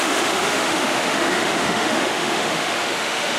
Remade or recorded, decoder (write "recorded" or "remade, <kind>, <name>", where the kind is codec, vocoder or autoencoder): remade, autoencoder, DAC-VAE